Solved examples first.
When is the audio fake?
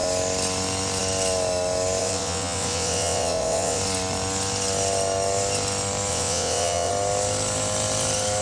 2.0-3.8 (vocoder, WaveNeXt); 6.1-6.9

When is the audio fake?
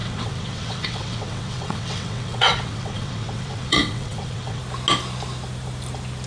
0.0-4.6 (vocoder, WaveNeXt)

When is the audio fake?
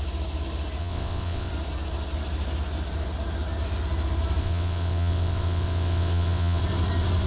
0.8-1.5 (vocoder, WaveNeXt); 4.4-6.6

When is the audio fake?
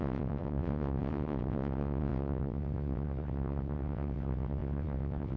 0.0-5.4 (vocoder, WaveNeXt)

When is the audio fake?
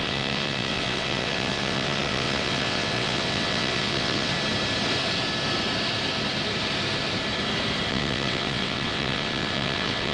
0.0-4.3 (vocoder, WaveNeXt); 7.9-10.1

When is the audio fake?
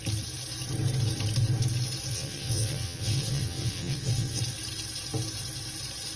2.1-4.4 (vocoder, WaveNeXt)